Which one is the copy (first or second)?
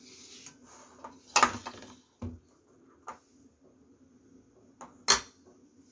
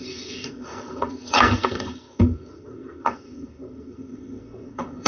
second